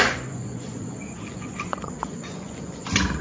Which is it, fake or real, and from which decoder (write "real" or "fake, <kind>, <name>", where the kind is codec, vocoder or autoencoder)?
fake, vocoder, Vocos